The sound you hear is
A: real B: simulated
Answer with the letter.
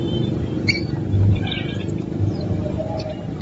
B